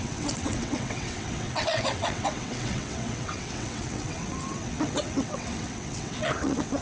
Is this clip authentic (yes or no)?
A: no